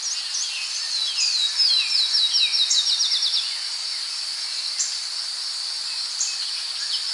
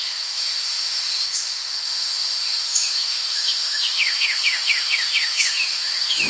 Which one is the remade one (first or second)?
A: second